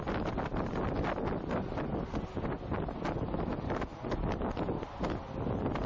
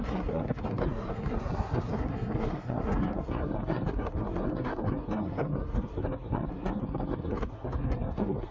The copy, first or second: second